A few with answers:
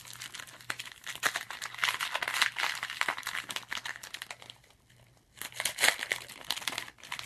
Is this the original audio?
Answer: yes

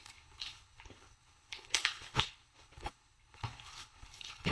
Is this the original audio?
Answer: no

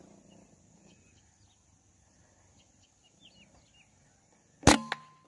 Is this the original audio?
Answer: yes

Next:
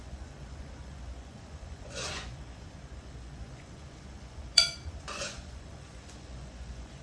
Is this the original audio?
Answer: no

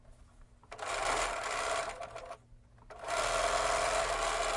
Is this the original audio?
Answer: yes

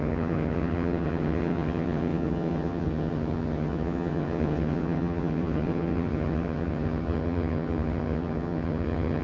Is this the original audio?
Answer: no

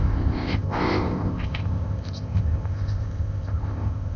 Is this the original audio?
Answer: no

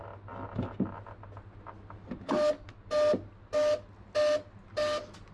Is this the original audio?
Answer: yes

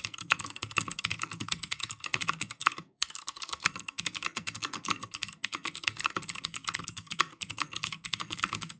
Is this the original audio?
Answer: no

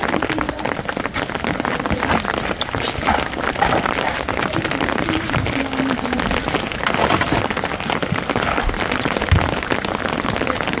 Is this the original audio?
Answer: yes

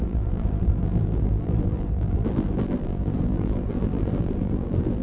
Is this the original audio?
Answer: no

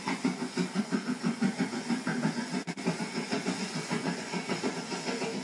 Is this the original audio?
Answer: no